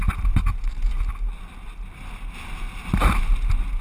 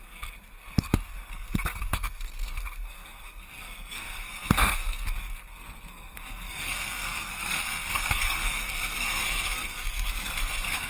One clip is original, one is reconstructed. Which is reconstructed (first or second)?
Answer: second